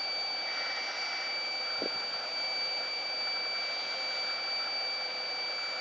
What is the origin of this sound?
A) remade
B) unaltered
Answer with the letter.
B